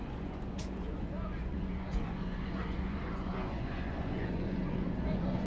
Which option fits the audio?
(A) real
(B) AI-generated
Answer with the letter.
B